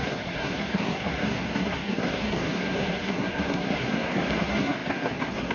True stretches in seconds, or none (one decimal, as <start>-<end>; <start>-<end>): none